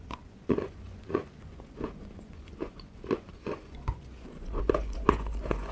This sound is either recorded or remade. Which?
remade